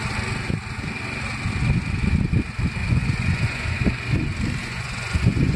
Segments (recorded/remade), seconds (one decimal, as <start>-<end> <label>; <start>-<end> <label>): 0.0-2.8 recorded; 2.8-3.8 remade; 3.8-4.6 recorded; 4.6-5.6 remade

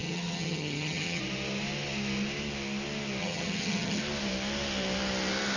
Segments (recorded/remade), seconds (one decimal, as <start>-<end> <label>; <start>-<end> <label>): 0.0-1.2 remade; 1.2-3.2 recorded; 3.2-4.0 remade; 4.0-5.6 recorded

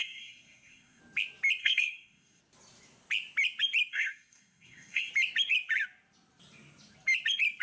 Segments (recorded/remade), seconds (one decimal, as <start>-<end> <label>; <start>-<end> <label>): 0.0-1.0 remade; 1.0-1.6 recorded; 1.6-2.4 remade; 2.4-3.9 recorded; 3.9-5.1 remade; 5.1-7.6 recorded

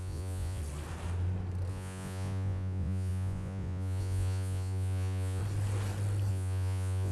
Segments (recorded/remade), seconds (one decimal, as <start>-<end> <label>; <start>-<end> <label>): 0.0-0.6 remade; 0.6-1.7 recorded; 1.7-5.4 remade; 5.4-6.3 recorded; 6.3-7.1 remade